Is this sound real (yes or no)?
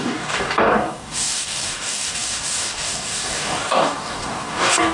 no